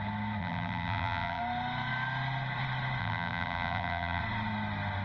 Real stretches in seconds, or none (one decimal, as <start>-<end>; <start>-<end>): 0.0-0.4; 1.4-3.0; 4.2-5.0

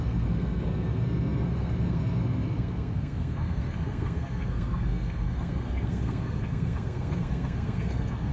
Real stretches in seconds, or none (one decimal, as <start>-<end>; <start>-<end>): none

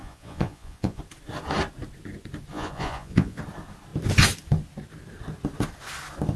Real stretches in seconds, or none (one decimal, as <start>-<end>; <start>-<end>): 1.0-2.5; 3.4-6.4

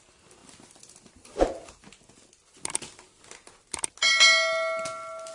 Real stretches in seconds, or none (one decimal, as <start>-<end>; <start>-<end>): 0.0-5.3

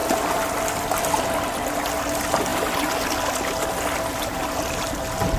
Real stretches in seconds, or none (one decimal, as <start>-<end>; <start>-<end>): 0.0-5.4